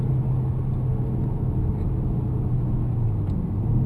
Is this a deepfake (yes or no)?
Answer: no